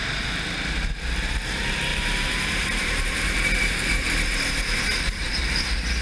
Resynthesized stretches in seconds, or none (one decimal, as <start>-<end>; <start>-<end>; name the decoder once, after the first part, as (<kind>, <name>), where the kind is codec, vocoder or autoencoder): 1.9-5.5 (vocoder, BigVGAN v2)